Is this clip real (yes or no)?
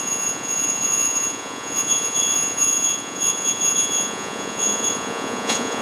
no